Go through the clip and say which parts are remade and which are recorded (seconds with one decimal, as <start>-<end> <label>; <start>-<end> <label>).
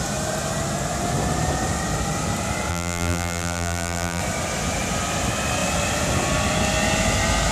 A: 0.0-2.7 recorded; 2.7-4.2 remade; 4.2-7.5 recorded